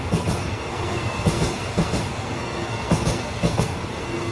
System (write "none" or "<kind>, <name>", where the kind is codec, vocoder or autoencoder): codec, SNAC